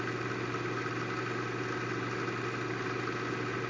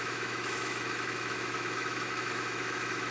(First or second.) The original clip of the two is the first